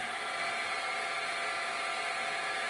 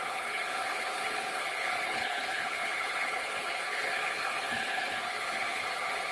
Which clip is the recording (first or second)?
first